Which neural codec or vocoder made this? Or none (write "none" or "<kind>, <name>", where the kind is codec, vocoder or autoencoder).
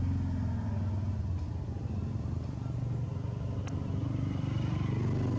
none